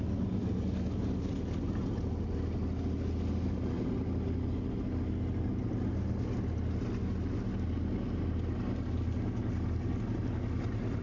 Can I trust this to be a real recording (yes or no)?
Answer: yes